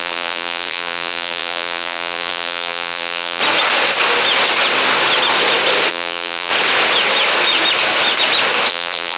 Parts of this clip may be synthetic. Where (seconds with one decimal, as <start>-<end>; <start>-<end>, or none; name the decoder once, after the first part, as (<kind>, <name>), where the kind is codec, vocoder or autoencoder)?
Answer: 0.0-3.4 (vocoder, BigVGAN v2); 5.9-6.5; 8.7-9.2